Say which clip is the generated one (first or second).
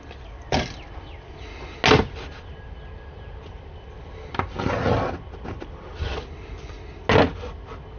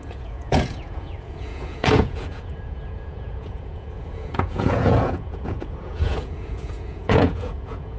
second